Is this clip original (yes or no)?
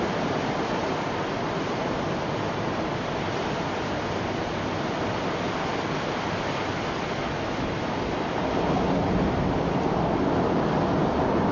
yes